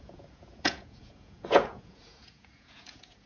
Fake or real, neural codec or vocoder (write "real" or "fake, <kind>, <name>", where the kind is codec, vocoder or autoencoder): fake, vocoder, Vocos